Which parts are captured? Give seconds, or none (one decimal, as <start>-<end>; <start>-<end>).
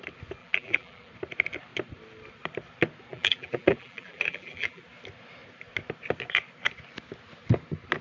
0.0-0.4; 1.1-3.1; 4.8-8.0